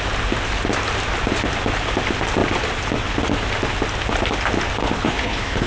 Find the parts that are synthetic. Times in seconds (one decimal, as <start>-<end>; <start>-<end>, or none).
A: 4.8-5.7